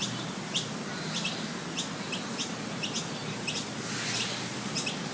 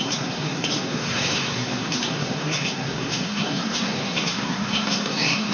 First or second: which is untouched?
first